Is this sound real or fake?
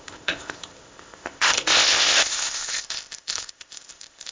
fake